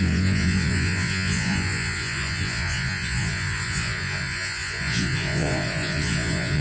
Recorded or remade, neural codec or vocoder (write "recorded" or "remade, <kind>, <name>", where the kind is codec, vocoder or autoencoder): remade, vocoder, Vocos